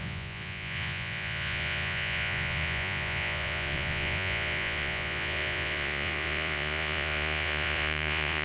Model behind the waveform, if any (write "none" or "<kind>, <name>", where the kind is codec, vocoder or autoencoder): vocoder, Vocos